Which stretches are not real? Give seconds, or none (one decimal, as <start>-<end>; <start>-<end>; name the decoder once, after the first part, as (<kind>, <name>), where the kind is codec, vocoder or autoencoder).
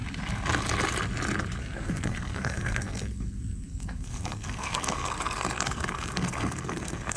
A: 1.6-7.2 (codec, SNAC)